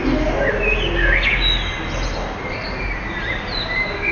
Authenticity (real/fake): real